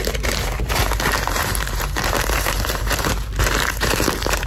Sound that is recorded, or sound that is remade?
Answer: remade